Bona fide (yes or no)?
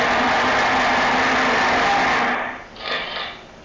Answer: yes